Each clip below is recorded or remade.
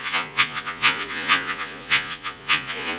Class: remade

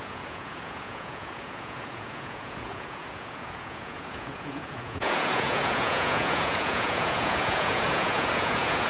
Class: remade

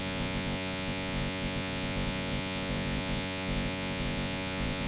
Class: remade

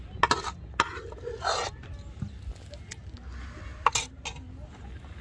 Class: recorded